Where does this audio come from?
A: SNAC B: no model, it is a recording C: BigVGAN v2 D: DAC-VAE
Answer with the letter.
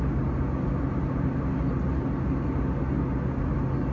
B